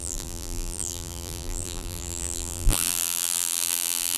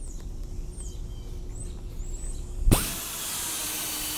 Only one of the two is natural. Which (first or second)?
second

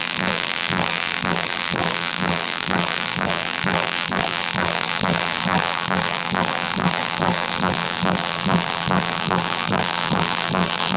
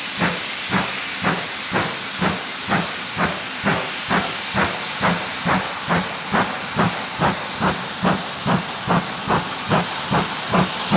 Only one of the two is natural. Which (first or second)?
second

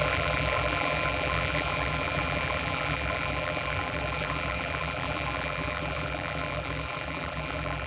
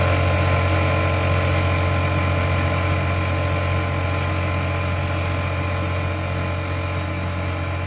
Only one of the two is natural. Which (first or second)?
second